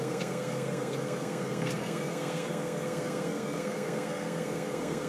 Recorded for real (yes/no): no